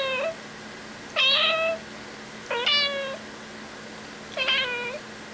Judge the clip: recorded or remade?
recorded